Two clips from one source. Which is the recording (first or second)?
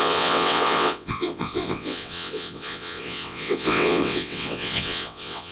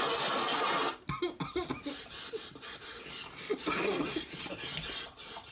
second